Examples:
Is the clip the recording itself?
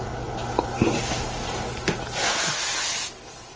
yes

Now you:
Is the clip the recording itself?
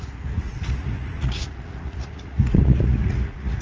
no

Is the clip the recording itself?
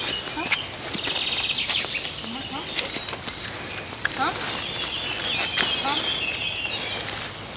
yes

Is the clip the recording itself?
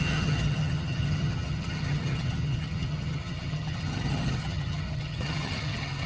no